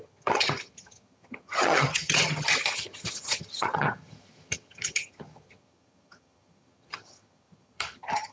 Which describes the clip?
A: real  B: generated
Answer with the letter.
B